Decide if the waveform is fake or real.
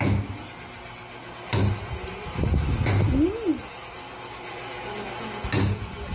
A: real